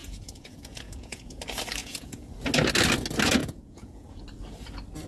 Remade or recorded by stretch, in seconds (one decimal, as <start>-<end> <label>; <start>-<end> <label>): 0.0-1.4 remade; 1.4-1.8 recorded; 1.8-2.3 remade; 2.3-3.4 recorded; 3.4-4.2 remade; 4.2-5.1 recorded